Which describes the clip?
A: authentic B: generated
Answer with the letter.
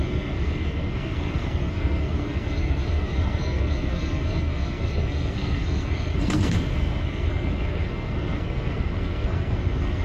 B